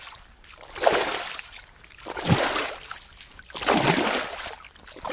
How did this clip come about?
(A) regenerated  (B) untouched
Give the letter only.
B